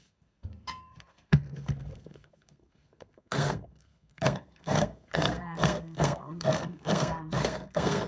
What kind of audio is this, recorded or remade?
remade